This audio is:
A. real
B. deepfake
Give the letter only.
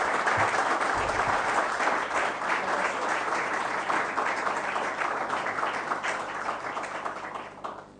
B